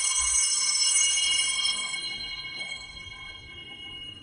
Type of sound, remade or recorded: remade